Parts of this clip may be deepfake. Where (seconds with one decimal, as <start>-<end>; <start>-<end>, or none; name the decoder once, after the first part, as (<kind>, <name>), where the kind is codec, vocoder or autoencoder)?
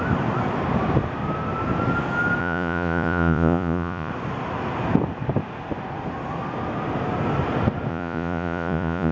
2.4-4.1 (vocoder, Vocos); 7.9-9.1